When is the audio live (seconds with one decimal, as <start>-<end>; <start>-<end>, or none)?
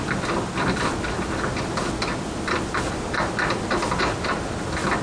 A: 0.0-5.0